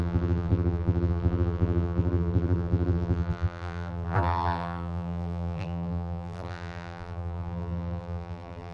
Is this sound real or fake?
fake